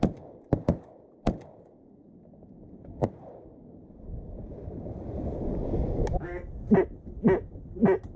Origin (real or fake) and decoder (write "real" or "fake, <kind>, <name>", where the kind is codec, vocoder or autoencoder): real